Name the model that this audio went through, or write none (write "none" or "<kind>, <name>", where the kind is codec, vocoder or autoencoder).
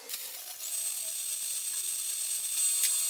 none